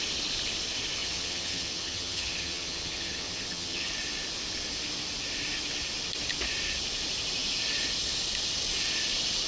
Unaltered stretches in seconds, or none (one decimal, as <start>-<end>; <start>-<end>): 0.0-1.0; 3.9-9.5